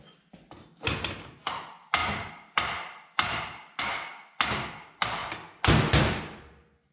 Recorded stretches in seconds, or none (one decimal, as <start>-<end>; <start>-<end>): 0.0-2.0; 3.8-6.9